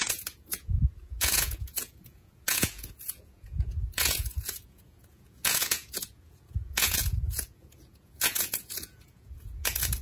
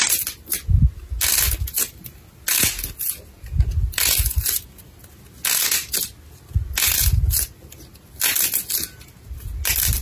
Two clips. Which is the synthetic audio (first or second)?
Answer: first